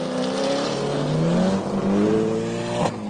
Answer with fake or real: real